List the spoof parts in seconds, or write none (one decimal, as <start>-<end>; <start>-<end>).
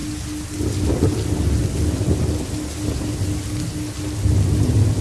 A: none